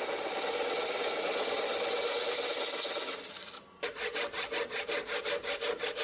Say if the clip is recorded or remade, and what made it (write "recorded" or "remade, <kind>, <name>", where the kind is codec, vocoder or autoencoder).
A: recorded